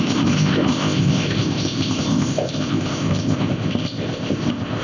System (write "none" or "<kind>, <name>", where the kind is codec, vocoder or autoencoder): codec, ZipCodec